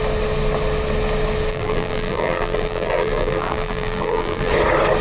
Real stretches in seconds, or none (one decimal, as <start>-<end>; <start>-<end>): 0.0-1.5; 4.5-5.0